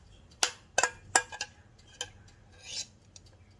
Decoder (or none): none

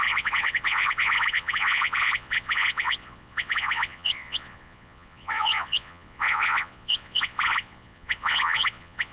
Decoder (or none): vocoder, Vocos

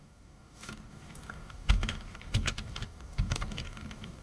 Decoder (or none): codec, DAC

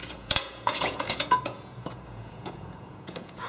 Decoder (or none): vocoder, Vocos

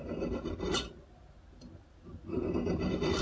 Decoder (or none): none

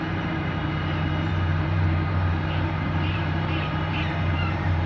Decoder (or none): vocoder, BigVGAN v2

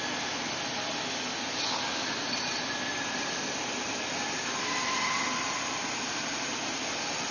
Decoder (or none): none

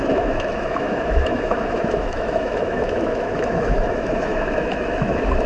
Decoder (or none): autoencoder, DAC-VAE